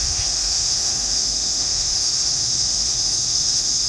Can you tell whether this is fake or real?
fake